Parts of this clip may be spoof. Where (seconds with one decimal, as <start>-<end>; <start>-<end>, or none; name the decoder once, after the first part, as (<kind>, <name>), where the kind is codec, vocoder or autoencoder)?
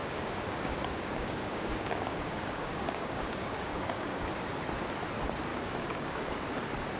0.0-4.2 (codec, DAC); 5.5-6.3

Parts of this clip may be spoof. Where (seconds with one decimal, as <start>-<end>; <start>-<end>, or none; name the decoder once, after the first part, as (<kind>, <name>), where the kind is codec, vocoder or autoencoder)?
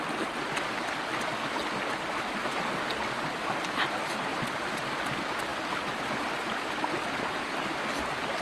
4.3-5.0 (vocoder, BigVGAN v2)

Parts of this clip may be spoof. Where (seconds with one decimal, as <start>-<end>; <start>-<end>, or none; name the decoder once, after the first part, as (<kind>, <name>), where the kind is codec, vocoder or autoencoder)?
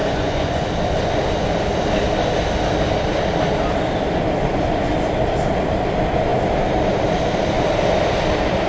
0.0-0.7 (vocoder, Vocos)